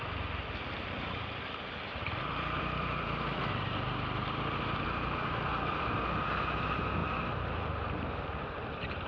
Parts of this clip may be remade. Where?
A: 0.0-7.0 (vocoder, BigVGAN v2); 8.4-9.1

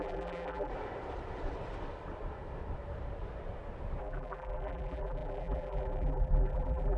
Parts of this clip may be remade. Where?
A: 0.0-0.7 (vocoder, BigVGAN v2); 4.0-7.0

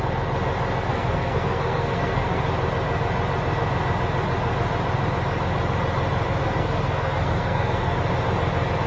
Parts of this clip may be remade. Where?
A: 0.9-2.4 (codec, SNAC); 6.4-8.0

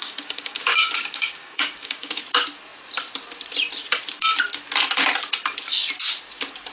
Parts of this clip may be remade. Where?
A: 0.0-2.2 (codec, DAC)

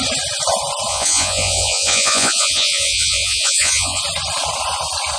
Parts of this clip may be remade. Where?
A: 0.9-4.0 (vocoder, Vocos)

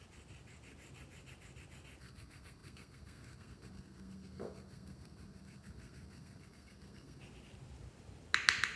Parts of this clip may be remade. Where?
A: 2.0-7.2 (codec, SNAC)

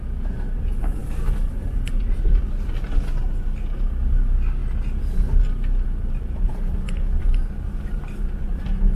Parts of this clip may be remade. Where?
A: 1.0-2.2 (vocoder, BigVGAN v2)

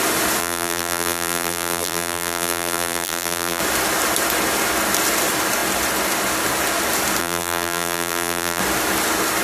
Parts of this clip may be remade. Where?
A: 0.4-3.6 (vocoder, BigVGAN v2); 7.2-8.6